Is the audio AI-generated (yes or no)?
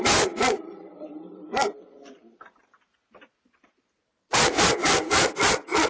yes